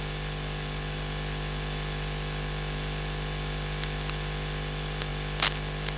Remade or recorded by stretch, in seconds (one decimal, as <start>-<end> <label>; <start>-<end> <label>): 0.0-6.0 recorded